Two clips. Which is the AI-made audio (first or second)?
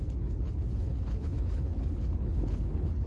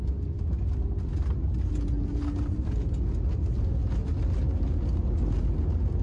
first